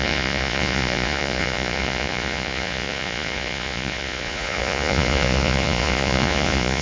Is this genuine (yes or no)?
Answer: no